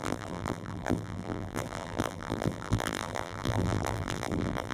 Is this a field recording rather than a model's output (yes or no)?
no